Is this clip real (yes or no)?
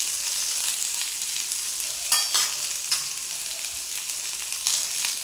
yes